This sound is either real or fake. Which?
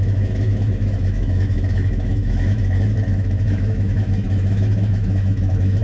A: fake